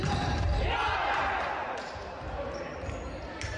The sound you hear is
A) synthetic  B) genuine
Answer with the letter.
B